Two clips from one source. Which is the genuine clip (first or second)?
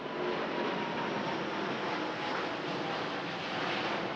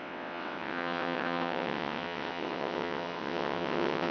first